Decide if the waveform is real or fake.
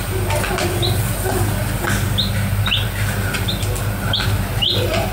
real